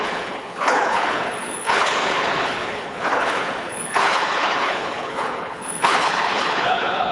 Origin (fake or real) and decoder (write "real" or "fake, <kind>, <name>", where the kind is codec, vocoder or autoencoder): fake, codec, HILCodec